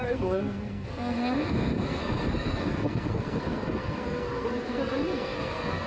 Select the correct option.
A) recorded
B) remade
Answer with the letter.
B